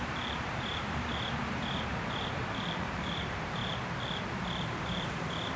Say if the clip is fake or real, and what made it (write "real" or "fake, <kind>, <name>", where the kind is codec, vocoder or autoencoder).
fake, vocoder, BigVGAN v2